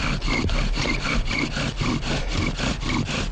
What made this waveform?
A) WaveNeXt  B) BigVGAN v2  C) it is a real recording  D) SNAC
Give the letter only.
C